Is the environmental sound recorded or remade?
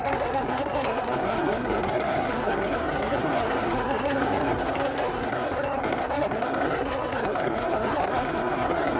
remade